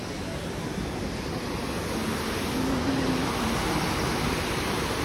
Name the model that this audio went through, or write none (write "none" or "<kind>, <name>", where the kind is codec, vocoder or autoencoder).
none